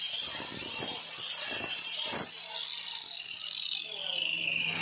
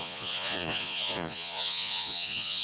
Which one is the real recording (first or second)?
first